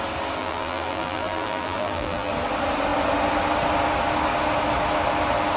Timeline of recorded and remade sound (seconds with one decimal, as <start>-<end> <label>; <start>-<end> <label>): 0.0-0.4 recorded; 0.4-2.3 remade; 2.3-5.6 recorded